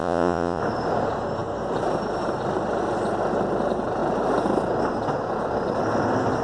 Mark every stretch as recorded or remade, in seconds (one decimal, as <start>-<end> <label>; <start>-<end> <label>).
0.0-0.6 remade; 0.6-6.4 recorded